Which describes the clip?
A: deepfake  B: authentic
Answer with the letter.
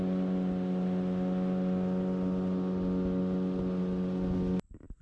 B